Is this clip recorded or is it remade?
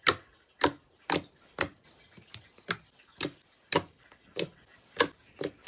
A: recorded